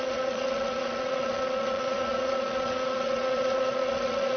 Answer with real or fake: fake